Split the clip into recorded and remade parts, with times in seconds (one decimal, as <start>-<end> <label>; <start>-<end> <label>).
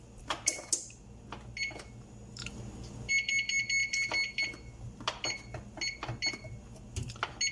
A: 0.0-7.5 recorded